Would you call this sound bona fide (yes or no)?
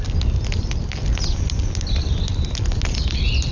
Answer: yes